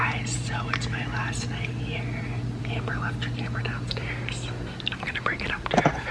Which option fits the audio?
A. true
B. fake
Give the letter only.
A